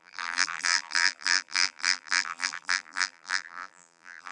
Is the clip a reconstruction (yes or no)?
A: yes